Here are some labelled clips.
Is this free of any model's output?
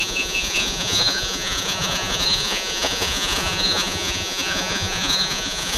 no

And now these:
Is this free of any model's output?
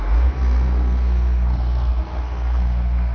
no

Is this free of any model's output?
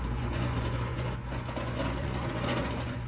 no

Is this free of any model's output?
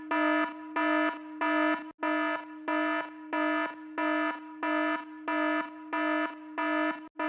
yes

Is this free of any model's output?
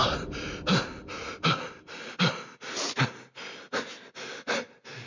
yes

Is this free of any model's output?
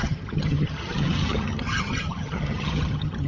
no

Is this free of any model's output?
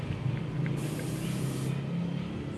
yes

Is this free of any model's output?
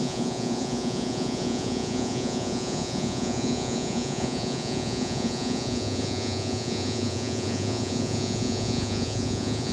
no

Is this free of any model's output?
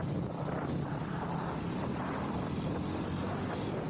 yes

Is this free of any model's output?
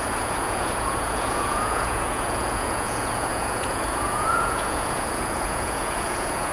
no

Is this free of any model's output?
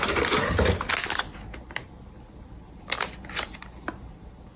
yes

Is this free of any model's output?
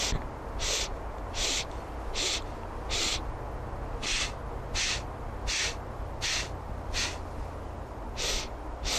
yes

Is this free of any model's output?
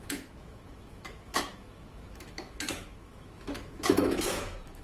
no